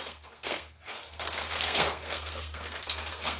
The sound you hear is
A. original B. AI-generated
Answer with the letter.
B